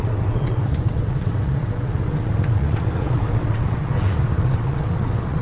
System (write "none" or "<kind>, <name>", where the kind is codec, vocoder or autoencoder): vocoder, WaveNeXt